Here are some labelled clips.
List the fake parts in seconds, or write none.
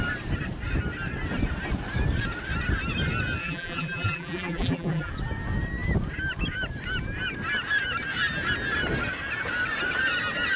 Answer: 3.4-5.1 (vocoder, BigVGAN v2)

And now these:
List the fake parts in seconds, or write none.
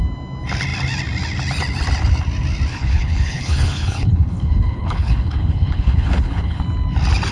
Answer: 2.7-6.6 (codec, HILCodec)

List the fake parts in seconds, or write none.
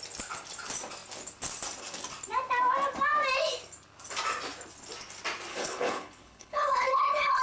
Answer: 5.5-7.4 (codec, HILCodec)